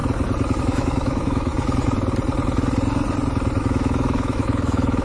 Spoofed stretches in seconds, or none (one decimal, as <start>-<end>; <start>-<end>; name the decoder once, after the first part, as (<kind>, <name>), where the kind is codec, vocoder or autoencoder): 0.6-1.5 (autoencoder, DAC-VAE); 3.6-5.0